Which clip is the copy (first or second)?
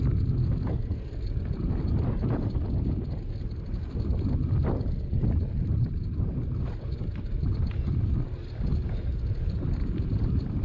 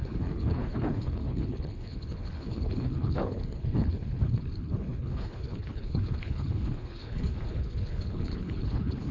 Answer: second